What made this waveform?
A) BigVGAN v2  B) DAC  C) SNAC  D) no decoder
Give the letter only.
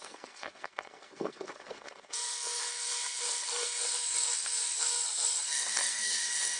C